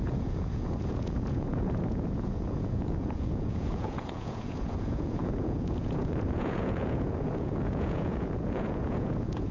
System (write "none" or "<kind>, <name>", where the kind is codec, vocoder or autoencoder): vocoder, Vocos